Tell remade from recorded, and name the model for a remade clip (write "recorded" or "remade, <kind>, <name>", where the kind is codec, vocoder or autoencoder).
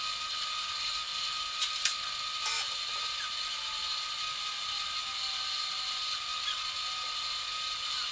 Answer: recorded